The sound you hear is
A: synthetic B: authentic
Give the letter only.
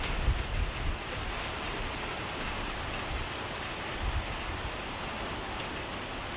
B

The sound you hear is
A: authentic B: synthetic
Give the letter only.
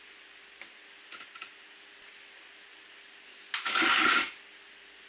A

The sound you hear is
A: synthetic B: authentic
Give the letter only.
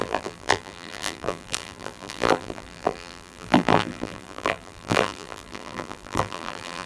A